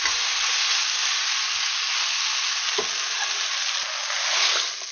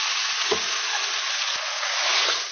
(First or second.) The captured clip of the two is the first